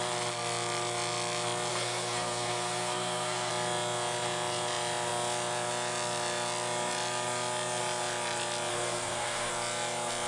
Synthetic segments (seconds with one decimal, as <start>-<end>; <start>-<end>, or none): 1.7-3.5; 8.7-9.5